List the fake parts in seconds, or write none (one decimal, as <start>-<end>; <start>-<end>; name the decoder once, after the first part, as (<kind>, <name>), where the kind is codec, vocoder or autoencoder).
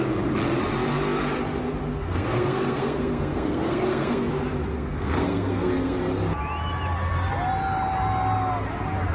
1.9-4.3 (codec, SNAC); 4.7-6.0